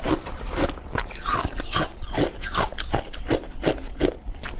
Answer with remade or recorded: recorded